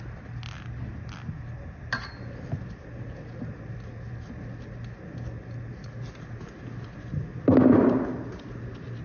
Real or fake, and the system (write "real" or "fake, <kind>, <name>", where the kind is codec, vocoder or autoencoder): real